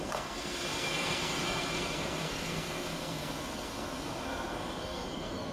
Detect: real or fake fake